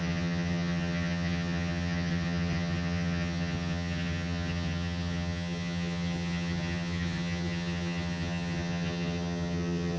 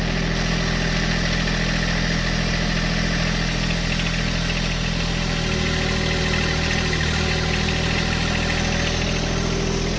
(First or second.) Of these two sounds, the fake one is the first